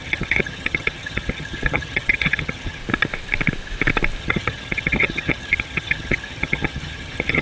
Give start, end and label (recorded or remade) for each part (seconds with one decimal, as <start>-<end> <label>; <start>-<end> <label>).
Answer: 0.0-2.8 remade; 2.8-4.2 recorded; 4.2-7.4 remade